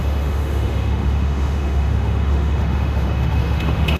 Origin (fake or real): fake